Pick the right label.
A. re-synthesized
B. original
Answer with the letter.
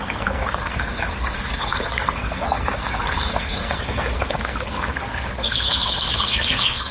A